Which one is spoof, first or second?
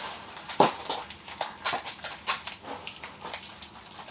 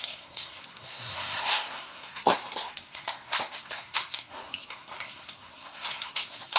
second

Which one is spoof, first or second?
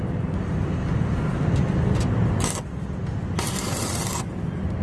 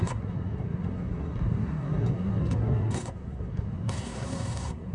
second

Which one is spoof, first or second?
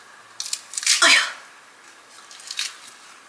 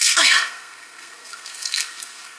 second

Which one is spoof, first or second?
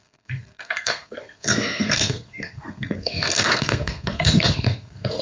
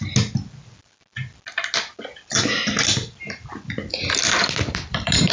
first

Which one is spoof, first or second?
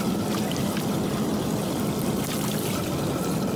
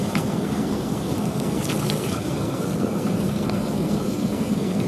second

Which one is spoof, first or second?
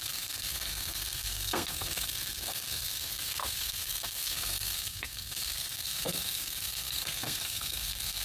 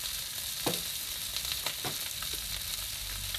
first